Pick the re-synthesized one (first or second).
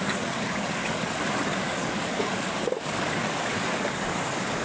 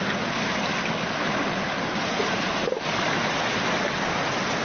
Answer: first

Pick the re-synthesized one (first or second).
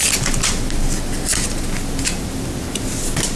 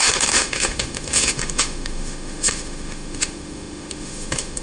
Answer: second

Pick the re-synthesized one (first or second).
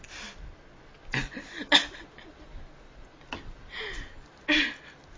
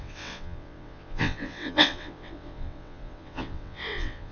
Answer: second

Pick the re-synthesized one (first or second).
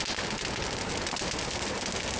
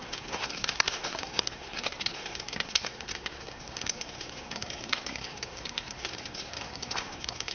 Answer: second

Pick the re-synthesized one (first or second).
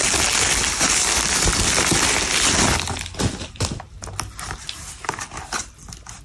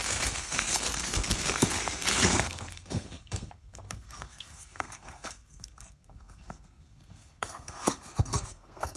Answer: second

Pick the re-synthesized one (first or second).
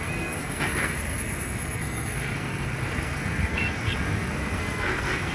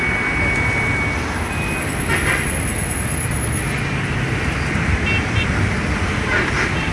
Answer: first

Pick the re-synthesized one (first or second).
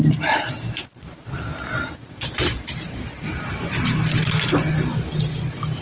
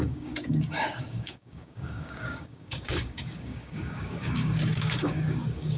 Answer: second